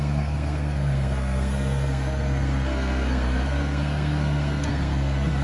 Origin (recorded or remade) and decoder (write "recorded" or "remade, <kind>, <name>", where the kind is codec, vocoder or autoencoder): remade, codec, SNAC